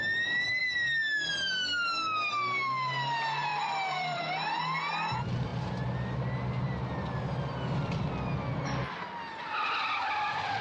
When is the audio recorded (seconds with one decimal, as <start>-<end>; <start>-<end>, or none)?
0.0-3.5; 4.2-10.6